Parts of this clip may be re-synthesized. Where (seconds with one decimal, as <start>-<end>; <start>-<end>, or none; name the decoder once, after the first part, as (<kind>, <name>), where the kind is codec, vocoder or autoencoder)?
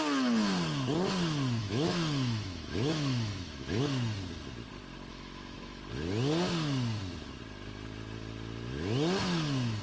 1.6-3.8 (autoencoder, DAC-VAE); 5.1-5.8